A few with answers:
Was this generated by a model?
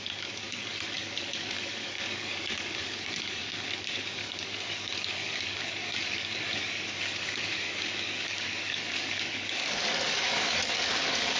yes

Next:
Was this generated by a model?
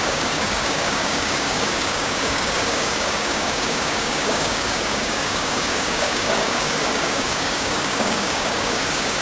yes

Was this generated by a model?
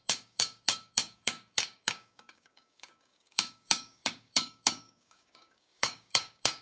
yes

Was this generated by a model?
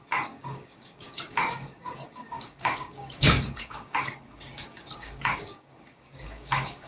yes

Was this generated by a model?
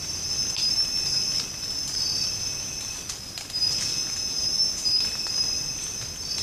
no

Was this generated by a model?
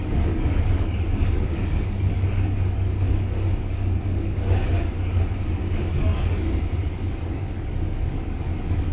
yes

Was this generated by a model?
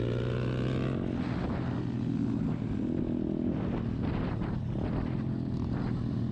no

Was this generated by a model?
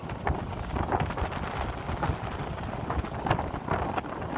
no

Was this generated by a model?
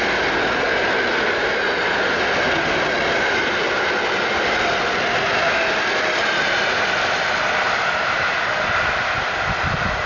no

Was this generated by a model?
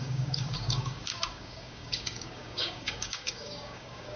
yes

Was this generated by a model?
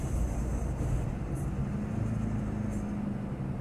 no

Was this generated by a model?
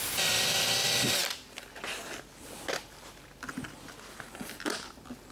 no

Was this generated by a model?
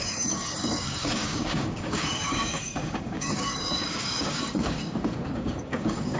yes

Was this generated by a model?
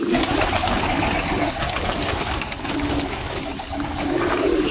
yes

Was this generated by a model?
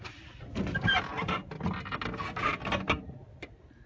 no